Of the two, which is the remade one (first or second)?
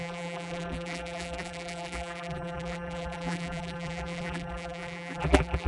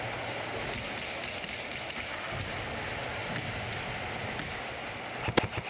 first